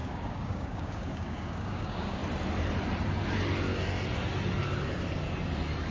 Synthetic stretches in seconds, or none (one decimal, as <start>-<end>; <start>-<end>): 0.0-2.2

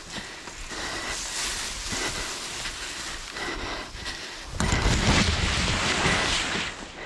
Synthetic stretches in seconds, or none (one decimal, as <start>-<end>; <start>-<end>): none

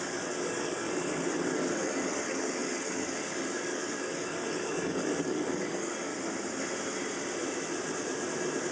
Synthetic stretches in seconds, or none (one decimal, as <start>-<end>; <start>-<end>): 0.0-6.1

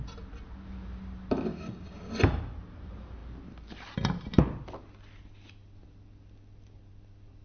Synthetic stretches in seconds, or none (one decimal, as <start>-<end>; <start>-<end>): 1.5-2.1

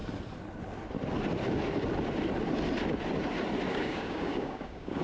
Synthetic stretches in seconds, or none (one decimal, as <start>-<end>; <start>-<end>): 3.7-5.0

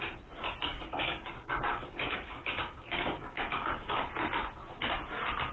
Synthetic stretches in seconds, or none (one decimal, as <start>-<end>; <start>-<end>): 0.7-4.0